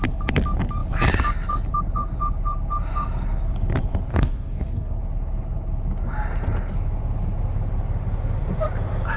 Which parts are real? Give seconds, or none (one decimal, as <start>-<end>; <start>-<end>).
0.0-4.1; 5.0-9.2